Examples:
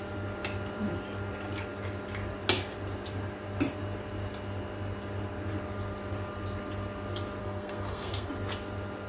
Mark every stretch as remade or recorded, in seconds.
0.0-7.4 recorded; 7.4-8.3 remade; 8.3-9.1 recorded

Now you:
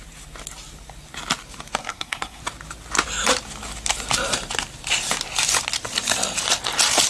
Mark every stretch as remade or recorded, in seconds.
0.0-1.8 recorded; 1.8-2.4 remade; 2.4-7.1 recorded

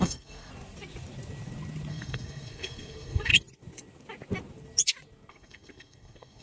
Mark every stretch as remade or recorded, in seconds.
0.0-0.5 remade; 0.5-1.9 recorded; 1.9-3.3 remade; 3.3-5.3 recorded; 5.3-6.4 remade